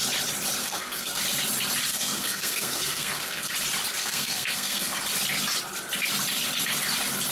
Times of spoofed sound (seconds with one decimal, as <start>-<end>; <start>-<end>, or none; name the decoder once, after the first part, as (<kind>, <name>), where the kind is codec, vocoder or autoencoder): 0.6-1.2 (codec, SNAC); 1.9-3.5; 4.0-5.0